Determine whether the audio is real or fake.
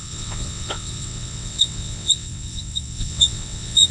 fake